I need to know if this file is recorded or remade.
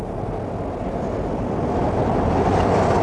recorded